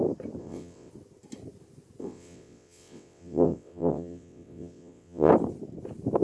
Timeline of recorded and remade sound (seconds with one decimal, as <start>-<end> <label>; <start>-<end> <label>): 0.0-0.4 recorded; 0.4-0.9 remade; 0.9-2.0 recorded; 2.0-5.3 remade; 5.3-6.2 recorded